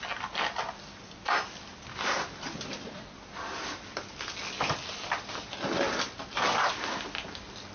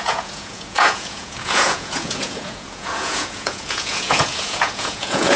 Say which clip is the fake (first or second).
second